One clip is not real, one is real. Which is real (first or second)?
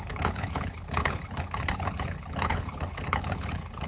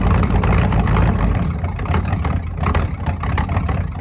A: second